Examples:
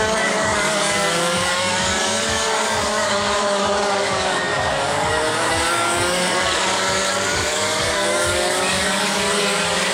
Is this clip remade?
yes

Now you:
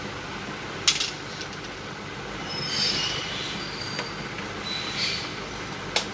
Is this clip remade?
no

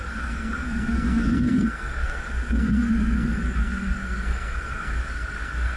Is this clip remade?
yes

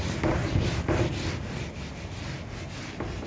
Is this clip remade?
no